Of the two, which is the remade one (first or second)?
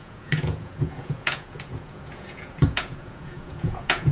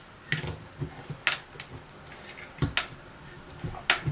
first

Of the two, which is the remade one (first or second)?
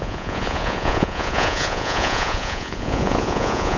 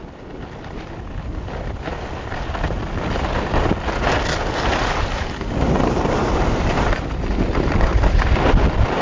first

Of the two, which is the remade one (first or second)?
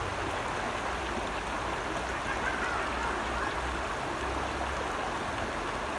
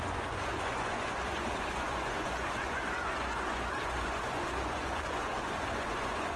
second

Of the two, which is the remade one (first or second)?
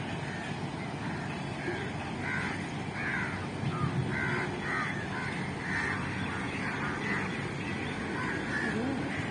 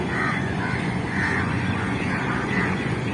second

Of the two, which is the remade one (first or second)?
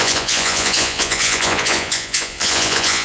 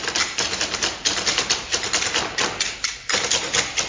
first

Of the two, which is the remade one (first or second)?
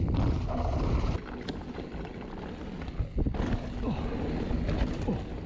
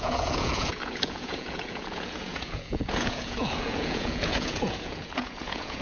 second